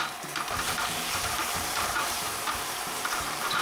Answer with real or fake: fake